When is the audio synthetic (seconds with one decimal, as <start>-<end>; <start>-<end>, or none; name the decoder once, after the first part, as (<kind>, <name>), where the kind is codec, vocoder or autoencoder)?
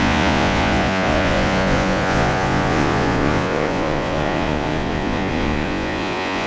0.0-6.5 (vocoder, Vocos)